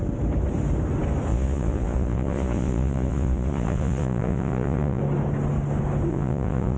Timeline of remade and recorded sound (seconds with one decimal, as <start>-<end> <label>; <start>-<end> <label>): 0.0-1.3 recorded; 1.3-5.0 remade; 5.0-6.1 recorded; 6.1-6.8 remade